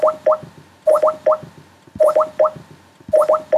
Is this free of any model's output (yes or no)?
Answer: yes